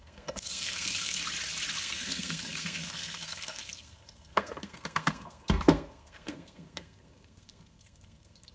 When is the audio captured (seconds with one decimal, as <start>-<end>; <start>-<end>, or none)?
1.2-1.8